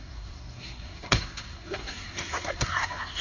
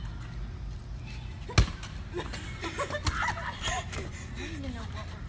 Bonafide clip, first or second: second